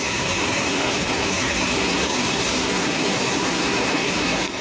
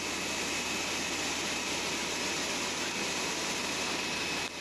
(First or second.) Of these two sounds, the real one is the second